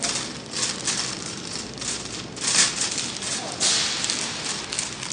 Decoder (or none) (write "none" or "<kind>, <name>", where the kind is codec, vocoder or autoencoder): none